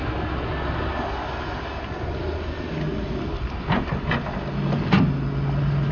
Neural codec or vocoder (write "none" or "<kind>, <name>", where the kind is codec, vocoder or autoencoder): none